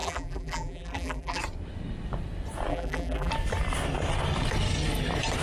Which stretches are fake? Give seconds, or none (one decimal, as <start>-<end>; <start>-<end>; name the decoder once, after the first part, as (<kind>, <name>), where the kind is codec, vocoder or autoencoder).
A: 0.0-1.4 (vocoder, BigVGAN v2); 2.7-3.3